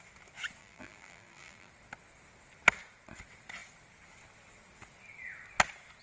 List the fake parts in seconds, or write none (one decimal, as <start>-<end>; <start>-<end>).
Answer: 0.6-1.7